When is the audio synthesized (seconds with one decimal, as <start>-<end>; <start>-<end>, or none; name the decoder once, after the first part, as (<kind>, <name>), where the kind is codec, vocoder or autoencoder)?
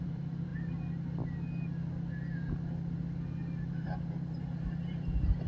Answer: 0.0-0.5 (vocoder, BigVGAN v2); 3.7-5.5